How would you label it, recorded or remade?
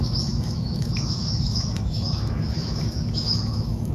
remade